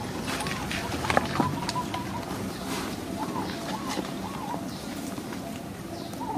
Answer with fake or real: real